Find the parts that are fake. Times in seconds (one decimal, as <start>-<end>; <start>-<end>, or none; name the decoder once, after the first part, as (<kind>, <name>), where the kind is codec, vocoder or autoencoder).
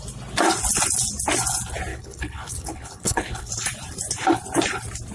1.9-3.5 (codec, HILCodec)